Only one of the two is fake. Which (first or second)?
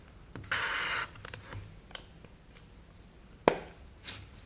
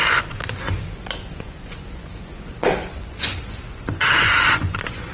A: second